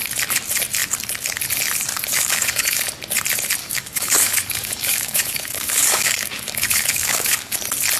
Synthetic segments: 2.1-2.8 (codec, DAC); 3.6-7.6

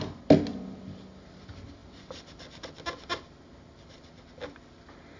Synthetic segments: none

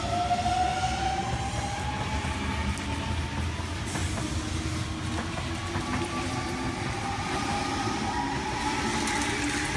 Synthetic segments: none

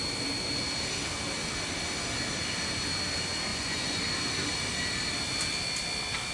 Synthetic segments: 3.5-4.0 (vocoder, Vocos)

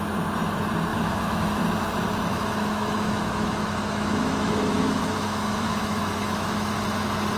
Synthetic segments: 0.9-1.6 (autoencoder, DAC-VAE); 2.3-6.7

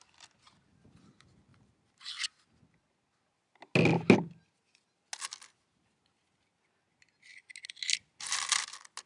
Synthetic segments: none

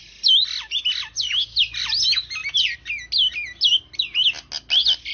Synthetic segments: none

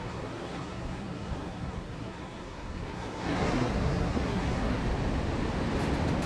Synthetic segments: 0.0-4.8 (codec, SNAC)